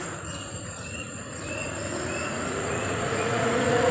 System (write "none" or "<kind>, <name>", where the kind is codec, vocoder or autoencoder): vocoder, Vocos